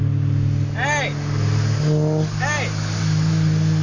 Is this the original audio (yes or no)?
yes